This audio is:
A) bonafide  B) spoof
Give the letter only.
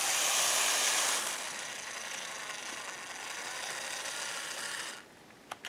A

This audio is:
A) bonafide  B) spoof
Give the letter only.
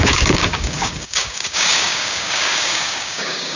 B